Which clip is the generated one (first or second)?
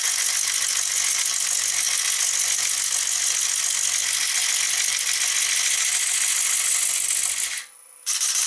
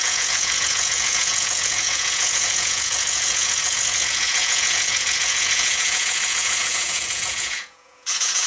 second